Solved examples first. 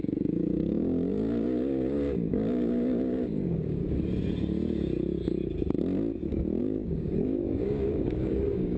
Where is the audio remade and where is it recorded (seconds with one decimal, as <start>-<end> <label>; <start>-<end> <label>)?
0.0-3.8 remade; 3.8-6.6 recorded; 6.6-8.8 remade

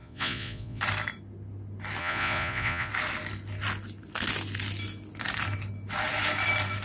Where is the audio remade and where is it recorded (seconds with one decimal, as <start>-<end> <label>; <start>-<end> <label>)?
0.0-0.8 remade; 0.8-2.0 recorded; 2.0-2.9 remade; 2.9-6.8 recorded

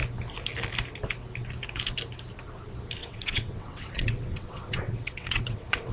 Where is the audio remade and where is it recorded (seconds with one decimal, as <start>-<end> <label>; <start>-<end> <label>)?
0.0-3.0 recorded; 3.0-5.9 remade

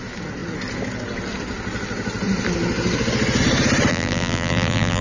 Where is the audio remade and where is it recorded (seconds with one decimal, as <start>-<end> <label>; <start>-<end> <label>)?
0.0-3.9 recorded; 3.9-5.0 remade

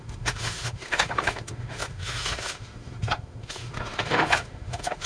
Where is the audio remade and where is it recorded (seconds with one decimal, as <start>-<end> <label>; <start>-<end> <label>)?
0.0-5.1 remade